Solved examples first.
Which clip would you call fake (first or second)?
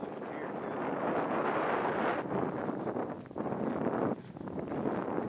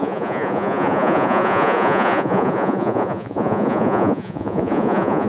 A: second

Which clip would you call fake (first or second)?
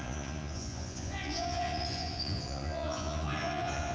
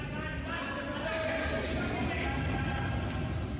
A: first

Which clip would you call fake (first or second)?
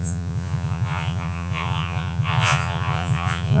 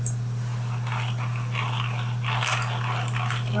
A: first